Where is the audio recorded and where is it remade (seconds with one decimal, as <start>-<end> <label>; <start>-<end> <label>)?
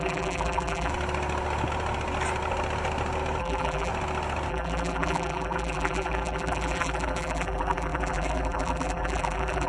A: 0.0-0.9 remade; 0.9-3.4 recorded; 3.4-3.9 remade; 3.9-4.5 recorded; 4.5-9.7 remade